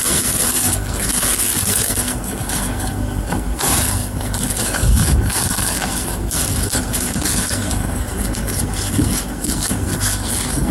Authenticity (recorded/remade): remade